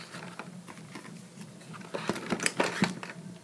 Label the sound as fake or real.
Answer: real